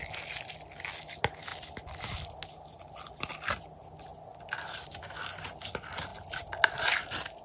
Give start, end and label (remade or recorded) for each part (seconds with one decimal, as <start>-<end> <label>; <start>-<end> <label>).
0.0-7.4 recorded